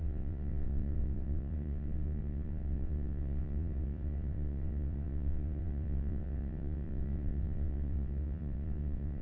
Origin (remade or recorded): remade